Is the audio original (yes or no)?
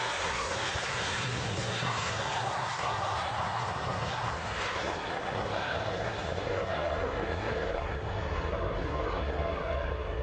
no